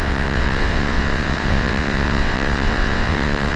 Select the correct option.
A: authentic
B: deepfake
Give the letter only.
B